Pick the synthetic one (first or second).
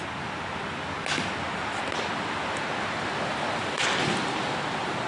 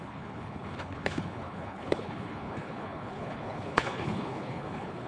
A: second